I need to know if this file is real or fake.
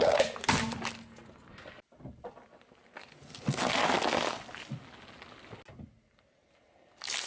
real